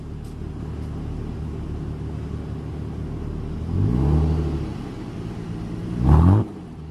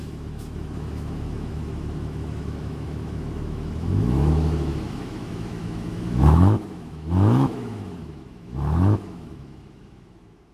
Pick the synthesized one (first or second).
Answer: second